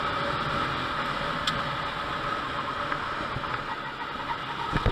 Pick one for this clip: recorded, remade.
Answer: recorded